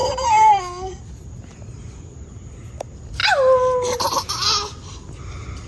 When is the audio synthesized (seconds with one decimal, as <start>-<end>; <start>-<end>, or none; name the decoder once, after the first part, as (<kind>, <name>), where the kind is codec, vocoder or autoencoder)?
0.0-1.0 (codec, SNAC)